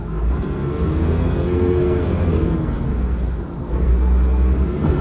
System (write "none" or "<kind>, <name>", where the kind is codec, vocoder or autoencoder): codec, SNAC